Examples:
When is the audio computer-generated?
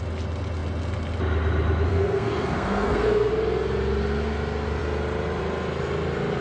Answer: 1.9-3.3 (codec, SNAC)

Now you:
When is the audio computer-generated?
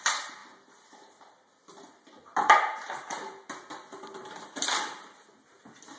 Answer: none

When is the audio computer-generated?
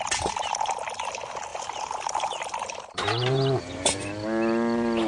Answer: 1.5-4.1 (vocoder, BigVGAN v2)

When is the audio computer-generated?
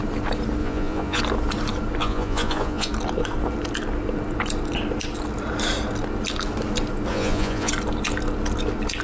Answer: 0.6-1.2 (vocoder, Vocos); 2.0-2.9; 7.1-7.7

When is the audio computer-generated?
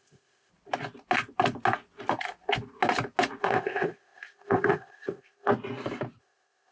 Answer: 0.0-0.5 (codec, ZipCodec); 3.4-5.5; 6.2-6.7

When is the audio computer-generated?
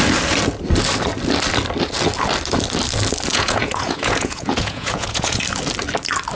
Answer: 3.3-5.4 (vocoder, Vocos)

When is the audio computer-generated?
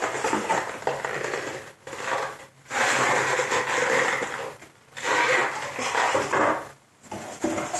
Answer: none